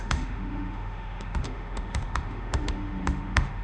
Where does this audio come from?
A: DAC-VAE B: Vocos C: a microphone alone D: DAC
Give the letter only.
A